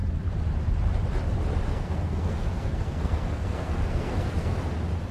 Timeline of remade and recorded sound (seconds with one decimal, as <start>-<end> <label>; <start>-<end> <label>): 0.0-1.7 recorded; 1.7-4.6 remade; 4.6-5.1 recorded